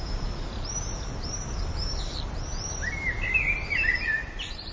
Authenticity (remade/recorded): recorded